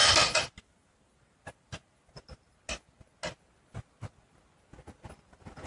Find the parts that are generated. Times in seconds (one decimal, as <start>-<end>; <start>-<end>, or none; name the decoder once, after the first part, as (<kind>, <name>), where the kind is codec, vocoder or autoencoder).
none